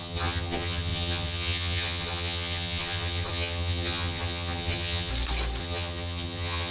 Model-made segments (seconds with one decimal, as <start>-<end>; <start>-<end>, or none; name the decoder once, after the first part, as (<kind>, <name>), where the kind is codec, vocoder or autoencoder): 0.0-5.1 (vocoder, HiFi-GAN); 5.6-6.7